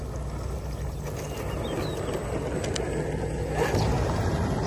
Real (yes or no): yes